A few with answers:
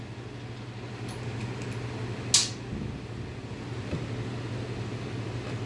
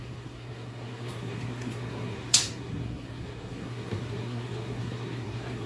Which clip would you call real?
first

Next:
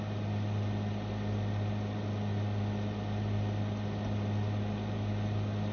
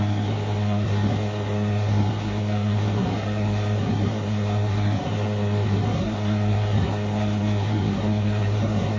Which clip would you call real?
first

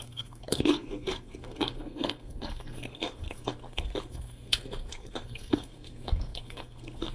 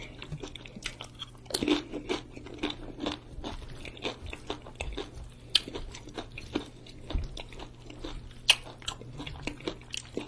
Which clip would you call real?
second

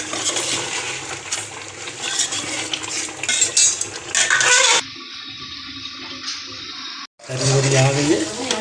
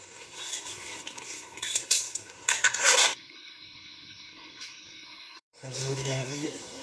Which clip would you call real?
first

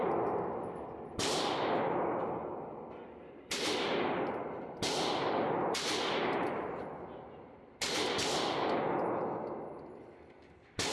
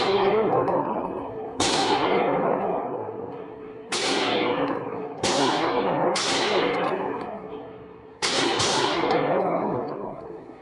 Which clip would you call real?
first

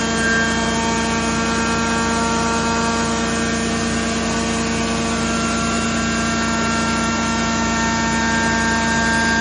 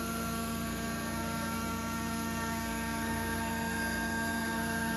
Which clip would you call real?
first